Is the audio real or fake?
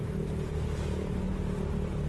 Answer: real